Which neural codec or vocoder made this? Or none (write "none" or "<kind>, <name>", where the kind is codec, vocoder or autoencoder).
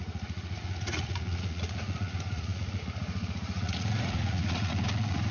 vocoder, Vocos